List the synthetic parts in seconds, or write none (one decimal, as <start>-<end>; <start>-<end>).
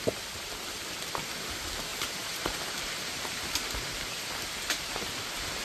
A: 1.9-3.5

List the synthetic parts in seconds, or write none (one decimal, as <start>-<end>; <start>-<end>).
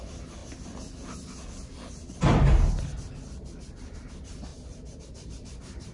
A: 4.5-5.9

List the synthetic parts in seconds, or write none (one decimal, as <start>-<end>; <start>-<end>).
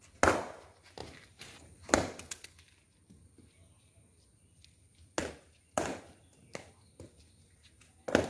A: 5.2-6.1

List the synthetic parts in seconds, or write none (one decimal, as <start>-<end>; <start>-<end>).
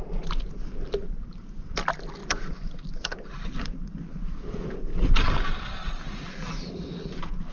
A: 1.0-1.8; 2.2-6.7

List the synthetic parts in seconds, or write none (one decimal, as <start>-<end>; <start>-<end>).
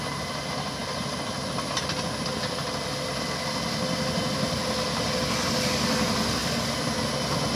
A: none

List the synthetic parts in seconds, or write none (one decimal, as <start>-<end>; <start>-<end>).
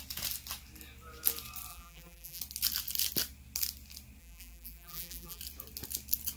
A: 1.7-2.4; 4.2-5.4